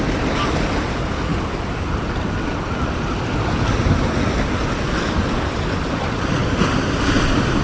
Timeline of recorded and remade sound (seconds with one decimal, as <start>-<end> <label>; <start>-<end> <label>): 0.0-7.6 recorded